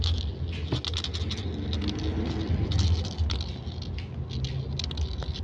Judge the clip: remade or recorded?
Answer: recorded